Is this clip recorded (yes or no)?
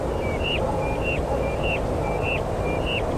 yes